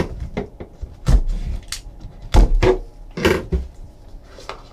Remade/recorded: recorded